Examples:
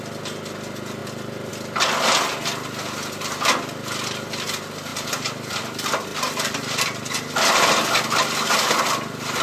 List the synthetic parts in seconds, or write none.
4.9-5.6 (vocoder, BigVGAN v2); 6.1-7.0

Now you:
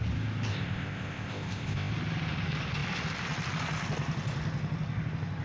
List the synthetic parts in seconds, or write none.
0.5-1.9 (codec, ZipCodec)

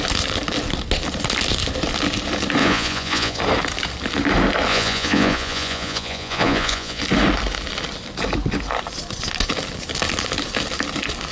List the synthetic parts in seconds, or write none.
2.6-3.4 (vocoder, Vocos); 4.7-7.0

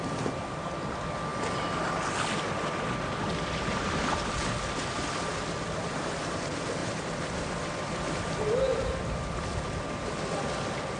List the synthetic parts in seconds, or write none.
6.8-7.5 (vocoder, BigVGAN v2); 8.7-9.2

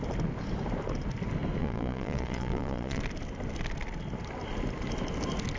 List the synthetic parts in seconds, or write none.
1.6-3.0 (vocoder, Vocos)